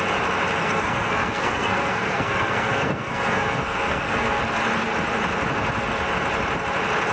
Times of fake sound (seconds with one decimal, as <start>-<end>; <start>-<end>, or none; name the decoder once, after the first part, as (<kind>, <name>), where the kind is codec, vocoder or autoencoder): 0.6-4.4 (codec, SNAC)